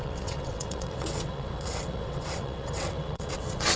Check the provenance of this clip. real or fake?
fake